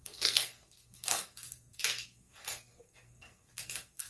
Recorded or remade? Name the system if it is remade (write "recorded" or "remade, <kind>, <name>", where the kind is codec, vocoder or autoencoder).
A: remade, codec, SNAC